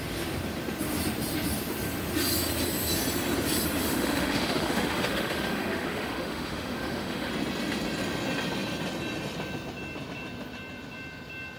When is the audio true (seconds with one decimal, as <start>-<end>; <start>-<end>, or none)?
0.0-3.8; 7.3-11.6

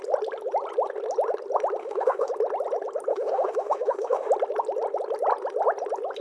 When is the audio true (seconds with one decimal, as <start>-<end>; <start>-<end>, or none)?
0.0-1.8; 2.3-3.1; 4.3-6.2

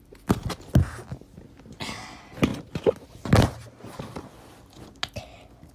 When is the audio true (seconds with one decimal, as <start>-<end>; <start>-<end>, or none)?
0.0-5.7

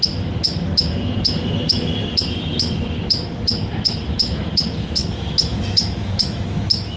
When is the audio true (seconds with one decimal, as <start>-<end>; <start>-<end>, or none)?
none

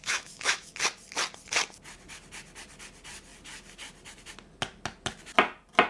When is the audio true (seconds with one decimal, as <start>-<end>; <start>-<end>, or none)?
0.7-5.9